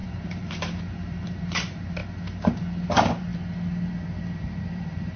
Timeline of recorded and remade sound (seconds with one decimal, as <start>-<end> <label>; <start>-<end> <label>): 0.0-2.0 remade; 2.0-2.9 recorded; 2.9-3.3 remade; 3.3-4.6 recorded; 4.6-5.2 remade